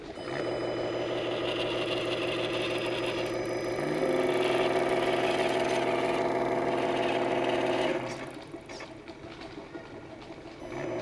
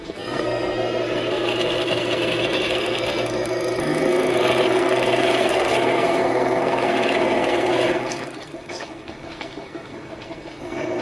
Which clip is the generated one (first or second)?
second